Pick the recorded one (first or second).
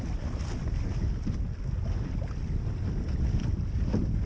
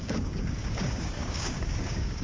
first